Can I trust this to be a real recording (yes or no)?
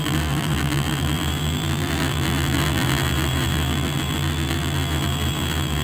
no